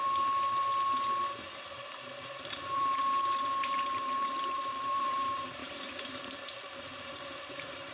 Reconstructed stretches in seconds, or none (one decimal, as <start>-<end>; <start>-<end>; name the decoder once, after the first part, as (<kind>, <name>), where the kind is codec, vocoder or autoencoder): 2.4-3.0 (vocoder, BigVGAN v2); 3.9-7.9